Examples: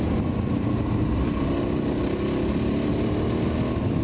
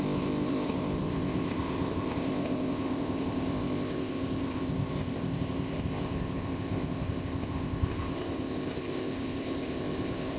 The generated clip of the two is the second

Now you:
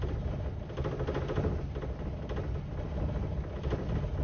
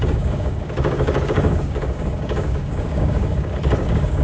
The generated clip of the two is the second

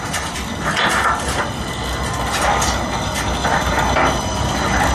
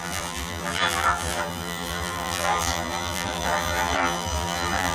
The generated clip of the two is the second